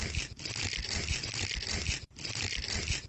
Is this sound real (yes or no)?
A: yes